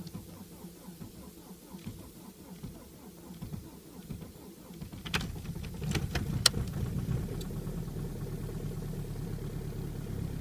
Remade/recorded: recorded